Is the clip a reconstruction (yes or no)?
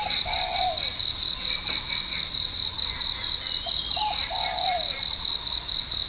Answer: no